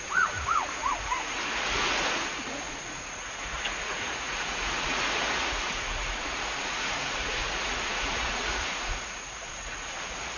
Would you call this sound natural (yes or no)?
no